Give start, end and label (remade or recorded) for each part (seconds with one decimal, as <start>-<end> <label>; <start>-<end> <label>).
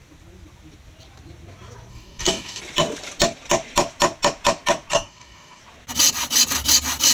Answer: 0.0-1.9 recorded; 1.9-2.6 remade; 2.6-4.9 recorded; 4.9-5.6 remade; 5.6-7.1 recorded